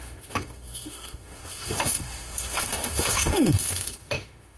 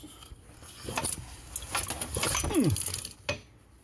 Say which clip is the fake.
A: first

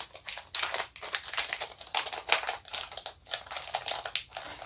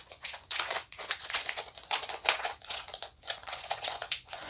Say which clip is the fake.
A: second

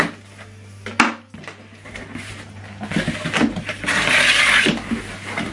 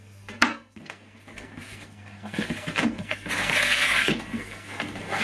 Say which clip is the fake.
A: second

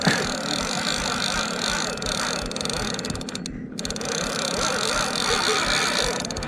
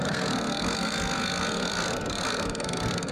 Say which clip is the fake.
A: second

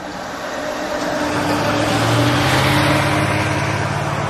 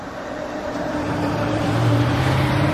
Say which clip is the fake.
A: second